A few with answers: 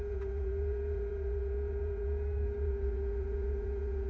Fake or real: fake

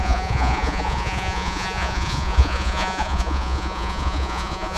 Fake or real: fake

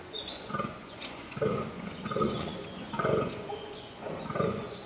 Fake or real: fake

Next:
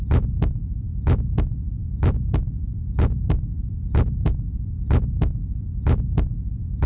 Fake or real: fake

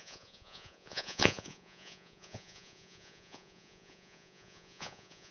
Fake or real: fake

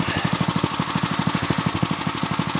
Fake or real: real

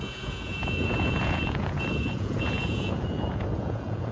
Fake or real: fake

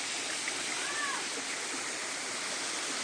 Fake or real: real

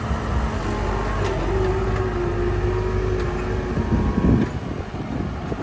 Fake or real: real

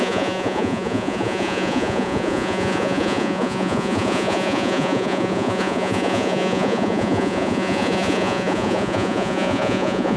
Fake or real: fake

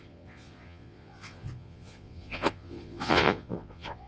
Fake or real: fake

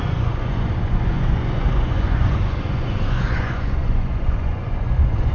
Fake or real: fake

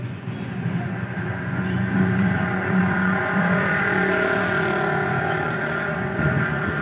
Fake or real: fake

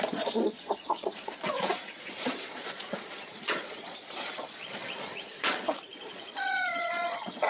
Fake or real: fake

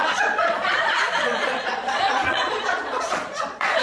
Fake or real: fake